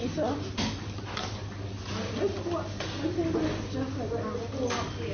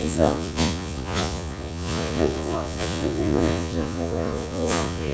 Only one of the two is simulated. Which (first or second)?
second